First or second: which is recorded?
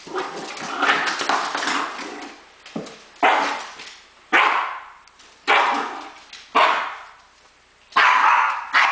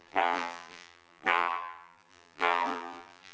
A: first